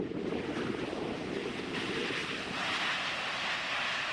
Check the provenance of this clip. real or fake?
fake